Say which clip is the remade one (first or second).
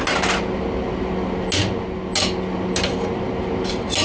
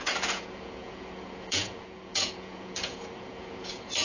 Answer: second